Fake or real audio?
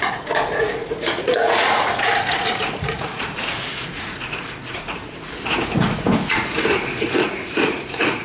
fake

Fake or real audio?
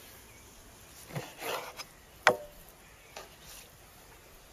real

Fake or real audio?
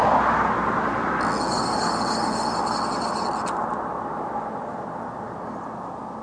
real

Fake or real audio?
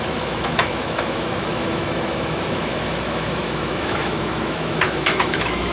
fake